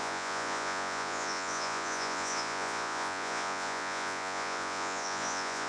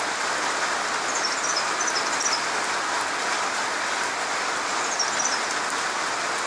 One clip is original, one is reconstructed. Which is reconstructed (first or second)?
first